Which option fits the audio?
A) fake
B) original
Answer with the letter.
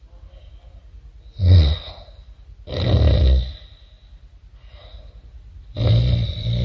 B